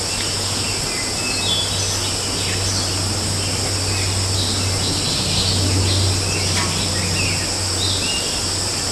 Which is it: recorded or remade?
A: recorded